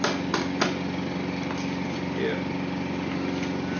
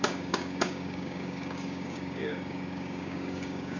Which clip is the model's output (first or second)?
second